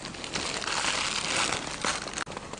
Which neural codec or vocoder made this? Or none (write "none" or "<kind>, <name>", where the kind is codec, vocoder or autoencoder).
none